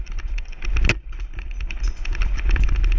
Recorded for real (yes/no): yes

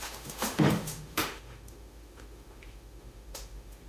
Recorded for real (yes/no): no